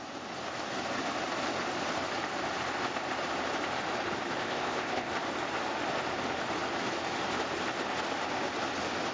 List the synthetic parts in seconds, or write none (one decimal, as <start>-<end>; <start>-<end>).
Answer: 4.4-5.1